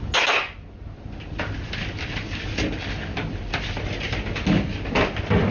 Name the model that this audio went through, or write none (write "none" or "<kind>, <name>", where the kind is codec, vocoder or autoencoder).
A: none